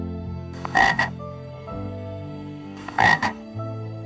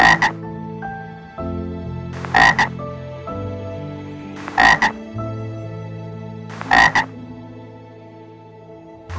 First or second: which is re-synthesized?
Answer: first